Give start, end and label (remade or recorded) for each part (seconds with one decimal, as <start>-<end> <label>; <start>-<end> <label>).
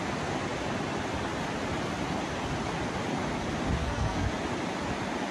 0.0-3.8 recorded; 3.8-4.3 remade; 4.3-5.3 recorded